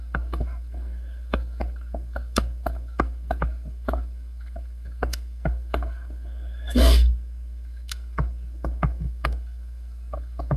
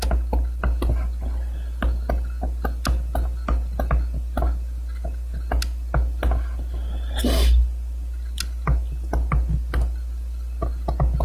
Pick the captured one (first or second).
second